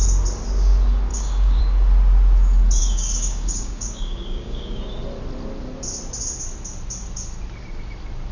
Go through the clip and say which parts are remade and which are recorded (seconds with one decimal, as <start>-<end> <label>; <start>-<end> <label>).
0.0-1.1 recorded; 1.1-1.6 remade; 1.6-2.8 recorded; 2.8-4.8 remade; 4.8-8.3 recorded